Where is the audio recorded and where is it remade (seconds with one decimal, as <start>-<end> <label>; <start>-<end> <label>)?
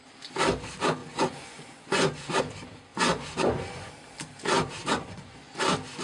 0.0-1.0 recorded; 1.0-2.4 remade; 2.4-2.9 recorded; 2.9-3.9 remade; 3.9-4.8 recorded; 4.8-5.6 remade; 5.6-6.0 recorded